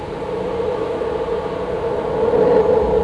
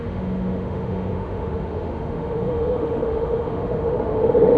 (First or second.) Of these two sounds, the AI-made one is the second